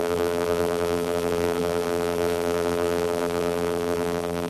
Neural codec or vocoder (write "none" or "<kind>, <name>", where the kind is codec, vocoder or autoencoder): vocoder, BigVGAN v2